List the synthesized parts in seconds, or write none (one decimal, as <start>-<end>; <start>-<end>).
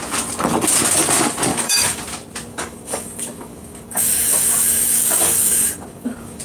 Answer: 1.5-2.0; 2.5-6.4